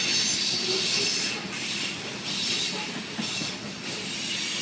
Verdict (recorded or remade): recorded